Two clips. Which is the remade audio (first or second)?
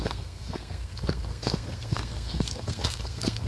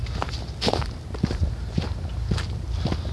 first